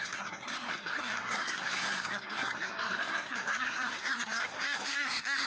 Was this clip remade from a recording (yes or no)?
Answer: yes